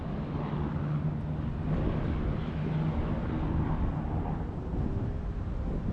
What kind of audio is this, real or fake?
real